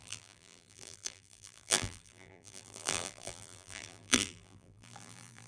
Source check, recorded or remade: remade